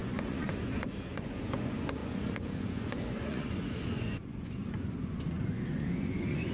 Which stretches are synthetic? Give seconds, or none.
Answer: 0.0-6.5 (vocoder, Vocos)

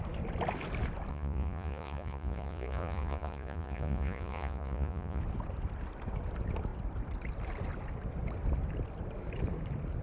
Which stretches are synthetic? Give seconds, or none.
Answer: 1.1-5.2 (vocoder, Vocos)

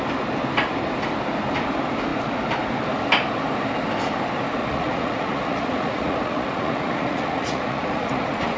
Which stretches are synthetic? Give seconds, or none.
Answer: 4.6-8.6 (vocoder, Vocos)

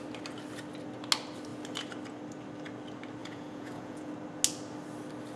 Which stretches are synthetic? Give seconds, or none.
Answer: 3.2-4.1 (vocoder, Vocos)

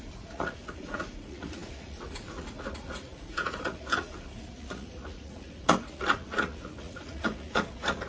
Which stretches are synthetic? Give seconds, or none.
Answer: 0.0-8.1 (vocoder, Vocos)